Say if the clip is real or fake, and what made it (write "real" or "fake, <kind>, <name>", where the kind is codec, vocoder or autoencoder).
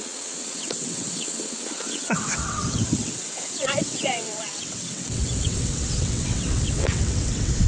fake, vocoder, WaveNeXt